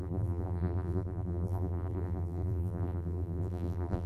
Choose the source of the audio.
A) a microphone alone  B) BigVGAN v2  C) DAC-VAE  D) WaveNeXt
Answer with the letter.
B